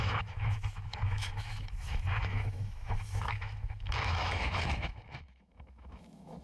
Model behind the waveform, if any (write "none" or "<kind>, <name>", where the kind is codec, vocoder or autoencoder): autoencoder, DAC-VAE